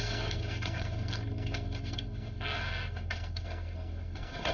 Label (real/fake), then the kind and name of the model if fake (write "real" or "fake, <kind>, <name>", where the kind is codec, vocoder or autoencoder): fake, codec, SNAC